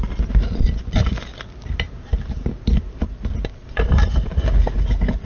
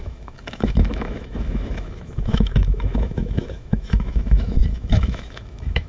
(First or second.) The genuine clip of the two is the first